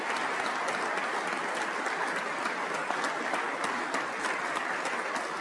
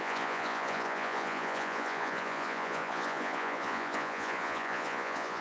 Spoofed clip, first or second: second